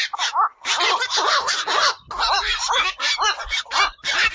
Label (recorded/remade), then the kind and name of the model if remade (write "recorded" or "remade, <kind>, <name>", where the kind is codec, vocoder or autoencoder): recorded